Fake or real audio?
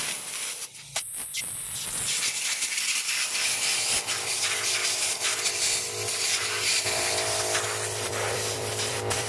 fake